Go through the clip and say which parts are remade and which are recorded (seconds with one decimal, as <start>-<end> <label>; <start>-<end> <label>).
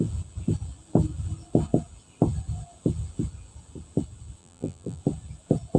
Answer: 0.0-4.4 recorded; 4.4-5.0 remade; 5.0-5.8 recorded